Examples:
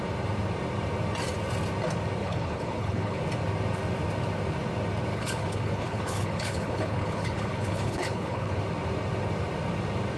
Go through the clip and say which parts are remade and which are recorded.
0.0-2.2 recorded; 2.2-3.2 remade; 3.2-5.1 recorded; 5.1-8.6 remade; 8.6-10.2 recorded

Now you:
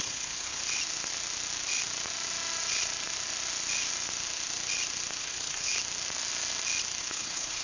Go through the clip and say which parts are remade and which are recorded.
0.0-0.6 remade; 0.6-5.2 recorded; 5.2-5.7 remade; 5.7-7.0 recorded; 7.0-7.6 remade

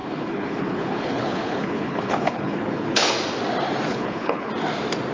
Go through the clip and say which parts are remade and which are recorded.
0.0-3.1 remade; 3.1-3.9 recorded; 3.9-4.5 remade; 4.5-5.1 recorded

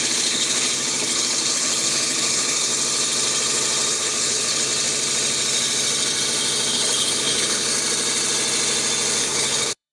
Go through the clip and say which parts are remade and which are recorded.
0.0-2.7 remade; 2.7-3.9 recorded; 3.9-4.7 remade; 4.7-6.7 recorded; 6.7-7.7 remade; 7.7-9.2 recorded; 9.2-9.9 remade

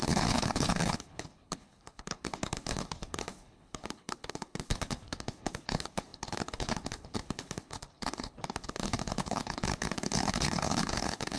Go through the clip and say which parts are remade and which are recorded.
0.0-11.4 remade